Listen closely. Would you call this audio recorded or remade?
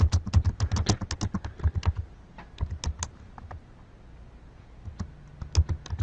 recorded